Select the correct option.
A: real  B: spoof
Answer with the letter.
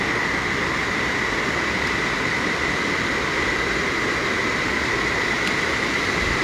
A